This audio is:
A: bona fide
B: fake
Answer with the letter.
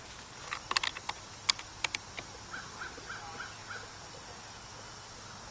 A